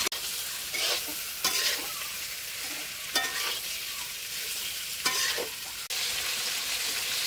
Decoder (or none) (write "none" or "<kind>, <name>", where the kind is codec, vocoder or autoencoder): none